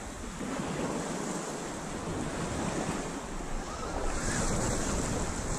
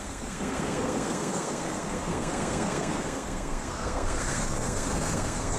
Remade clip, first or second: second